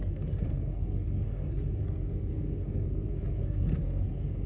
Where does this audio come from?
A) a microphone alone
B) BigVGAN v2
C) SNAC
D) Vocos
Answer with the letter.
C